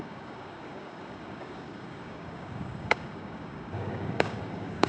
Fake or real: fake